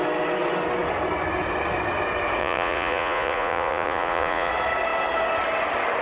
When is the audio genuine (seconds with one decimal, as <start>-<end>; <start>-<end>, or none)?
0.0-2.4; 4.5-6.0